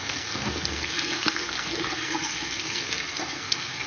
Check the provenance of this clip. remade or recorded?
remade